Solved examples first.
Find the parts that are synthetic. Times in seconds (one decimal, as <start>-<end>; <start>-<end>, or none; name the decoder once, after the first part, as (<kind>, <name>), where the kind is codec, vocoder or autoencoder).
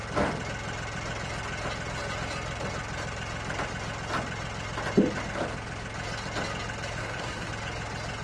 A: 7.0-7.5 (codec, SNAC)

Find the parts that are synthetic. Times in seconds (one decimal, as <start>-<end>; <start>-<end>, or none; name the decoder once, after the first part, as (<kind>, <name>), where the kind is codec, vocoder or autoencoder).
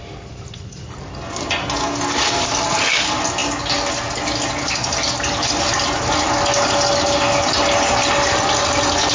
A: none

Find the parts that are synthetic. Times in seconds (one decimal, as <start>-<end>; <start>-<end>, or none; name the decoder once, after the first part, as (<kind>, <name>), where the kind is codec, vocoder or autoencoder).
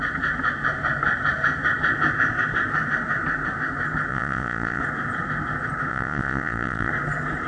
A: 4.1-4.8 (vocoder, Vocos); 5.9-6.9